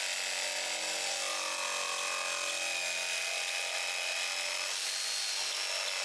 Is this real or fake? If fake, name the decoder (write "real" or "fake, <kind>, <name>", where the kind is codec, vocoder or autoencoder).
real